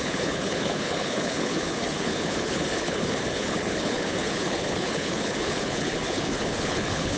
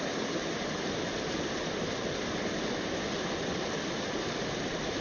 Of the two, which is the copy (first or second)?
first